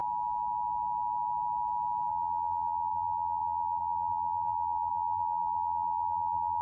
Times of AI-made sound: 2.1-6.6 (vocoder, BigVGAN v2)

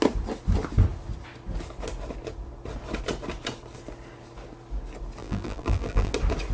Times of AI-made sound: 5.2-6.1 (vocoder, BigVGAN v2)